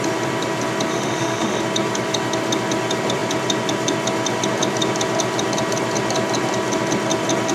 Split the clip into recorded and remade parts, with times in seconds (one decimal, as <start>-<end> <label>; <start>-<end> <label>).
0.0-0.9 recorded; 0.9-1.6 remade; 1.6-7.5 recorded